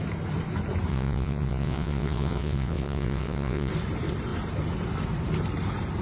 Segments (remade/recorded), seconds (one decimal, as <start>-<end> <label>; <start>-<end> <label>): 0.0-0.9 recorded; 0.9-3.7 remade; 3.7-6.0 recorded